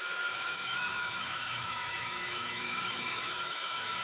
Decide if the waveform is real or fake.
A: fake